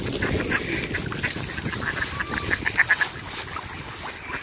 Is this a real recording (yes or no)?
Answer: yes